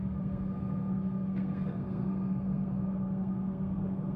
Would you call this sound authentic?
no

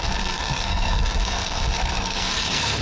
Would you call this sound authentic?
no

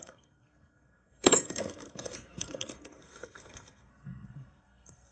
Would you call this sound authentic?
no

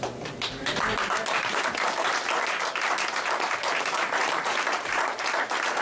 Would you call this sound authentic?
yes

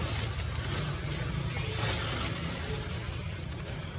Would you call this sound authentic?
yes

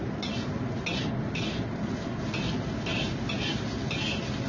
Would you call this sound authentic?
yes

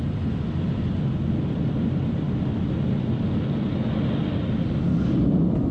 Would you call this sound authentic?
yes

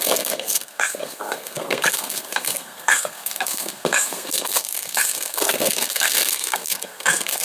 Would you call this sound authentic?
no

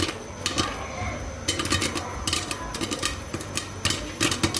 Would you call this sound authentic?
yes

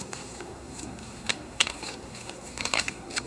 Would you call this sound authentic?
no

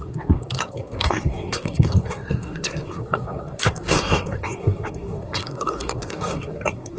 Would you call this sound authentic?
no